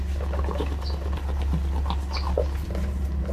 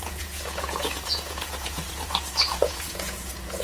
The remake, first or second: second